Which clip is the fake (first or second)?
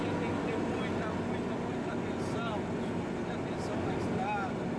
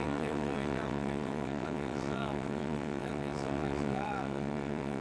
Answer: second